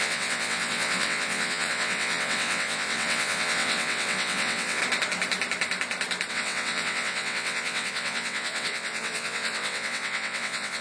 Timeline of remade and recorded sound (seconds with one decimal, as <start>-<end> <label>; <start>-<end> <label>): 0.0-4.8 remade; 4.8-6.3 recorded; 6.3-10.8 remade

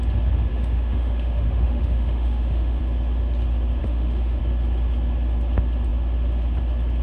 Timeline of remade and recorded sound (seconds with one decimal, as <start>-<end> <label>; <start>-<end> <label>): 0.0-0.5 recorded; 0.5-2.8 remade; 2.8-3.8 recorded; 3.8-4.4 remade; 4.4-7.0 recorded

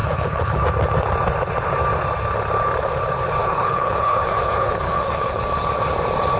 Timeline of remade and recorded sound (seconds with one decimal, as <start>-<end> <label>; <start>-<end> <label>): 0.0-0.6 remade; 0.6-3.4 recorded; 3.4-5.4 remade; 5.4-6.4 recorded

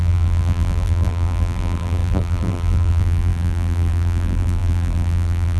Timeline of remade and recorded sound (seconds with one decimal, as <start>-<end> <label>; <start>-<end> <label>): 0.0-5.6 remade

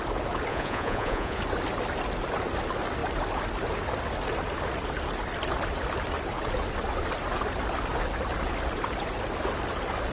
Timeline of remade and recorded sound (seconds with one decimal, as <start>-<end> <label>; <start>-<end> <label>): 0.0-0.5 recorded; 0.5-1.4 remade; 1.4-10.1 recorded

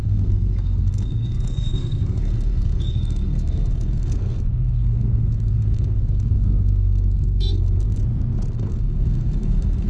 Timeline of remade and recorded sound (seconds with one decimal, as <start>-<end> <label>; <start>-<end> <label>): 0.0-8.0 remade; 8.0-8.5 recorded; 8.5-9.9 remade

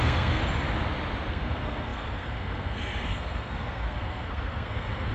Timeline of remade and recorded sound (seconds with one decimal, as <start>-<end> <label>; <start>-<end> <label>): 0.0-0.4 remade; 0.4-1.3 recorded; 1.3-5.1 remade

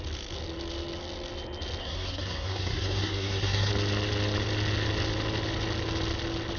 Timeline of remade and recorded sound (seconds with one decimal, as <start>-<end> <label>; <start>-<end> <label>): 0.0-1.8 recorded; 1.8-3.7 remade; 3.7-6.6 recorded